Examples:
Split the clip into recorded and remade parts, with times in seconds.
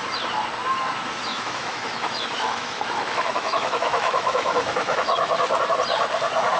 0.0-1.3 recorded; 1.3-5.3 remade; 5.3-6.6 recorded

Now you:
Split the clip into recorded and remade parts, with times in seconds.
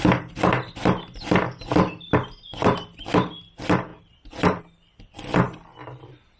0.0-6.4 recorded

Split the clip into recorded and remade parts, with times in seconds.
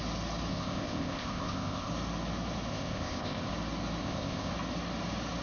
0.0-0.5 recorded; 0.5-1.9 remade; 1.9-2.7 recorded; 2.7-3.5 remade; 3.5-4.0 recorded; 4.0-4.5 remade; 4.5-5.4 recorded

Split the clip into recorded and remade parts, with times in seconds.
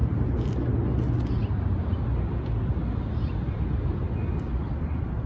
0.0-5.3 recorded